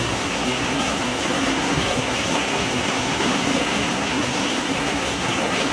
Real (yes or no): no